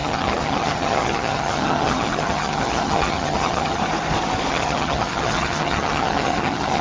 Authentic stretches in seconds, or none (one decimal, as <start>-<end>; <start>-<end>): 3.8-4.5